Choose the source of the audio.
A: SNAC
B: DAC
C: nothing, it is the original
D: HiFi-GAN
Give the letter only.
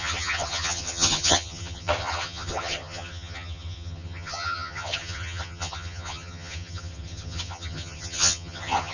D